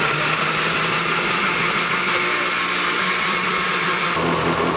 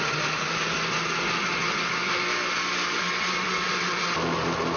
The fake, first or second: first